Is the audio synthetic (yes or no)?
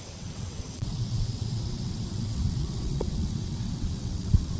yes